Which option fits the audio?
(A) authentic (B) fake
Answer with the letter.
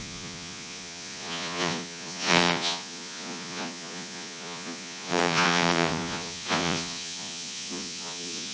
B